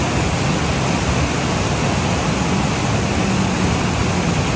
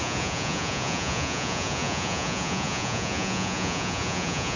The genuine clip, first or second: first